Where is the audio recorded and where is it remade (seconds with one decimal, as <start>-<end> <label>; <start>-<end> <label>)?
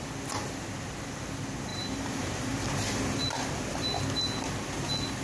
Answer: 0.0-1.7 recorded; 1.7-4.0 remade; 4.0-5.2 recorded